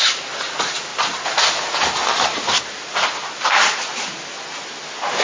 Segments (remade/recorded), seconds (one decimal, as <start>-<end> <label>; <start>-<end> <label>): 0.0-5.2 recorded